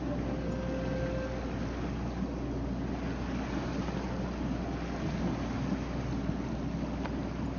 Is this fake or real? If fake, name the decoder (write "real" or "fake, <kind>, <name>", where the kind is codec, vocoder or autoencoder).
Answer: real